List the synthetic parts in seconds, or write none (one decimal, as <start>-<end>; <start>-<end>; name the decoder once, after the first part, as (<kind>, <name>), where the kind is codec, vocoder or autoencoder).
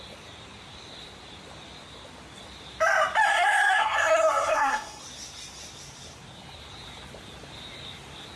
3.3-5.0 (codec, SNAC)